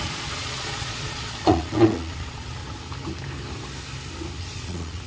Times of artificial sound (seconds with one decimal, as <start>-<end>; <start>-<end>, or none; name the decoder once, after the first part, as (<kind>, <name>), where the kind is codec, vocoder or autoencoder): 0.0-2.6 (vocoder, Vocos); 4.4-5.1